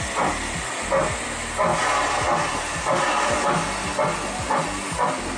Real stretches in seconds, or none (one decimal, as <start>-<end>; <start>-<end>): 0.0-5.4